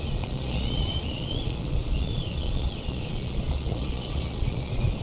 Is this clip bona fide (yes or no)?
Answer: no